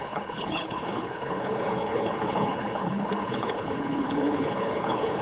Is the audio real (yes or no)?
no